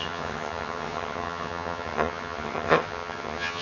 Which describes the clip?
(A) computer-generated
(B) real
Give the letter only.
A